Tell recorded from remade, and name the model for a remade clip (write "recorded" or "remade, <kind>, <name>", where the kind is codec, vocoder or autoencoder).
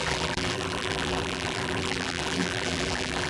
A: remade, vocoder, BigVGAN v2